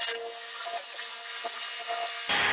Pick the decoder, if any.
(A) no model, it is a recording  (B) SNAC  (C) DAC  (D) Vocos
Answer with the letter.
A